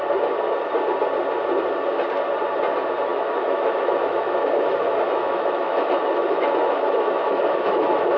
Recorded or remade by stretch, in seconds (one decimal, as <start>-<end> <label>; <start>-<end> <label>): 0.0-3.1 recorded; 3.1-8.2 remade